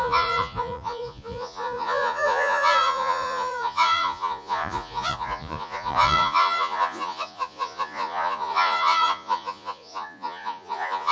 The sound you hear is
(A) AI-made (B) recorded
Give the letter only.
A